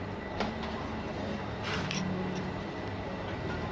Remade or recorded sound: recorded